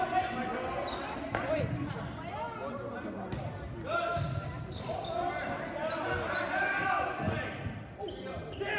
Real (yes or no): yes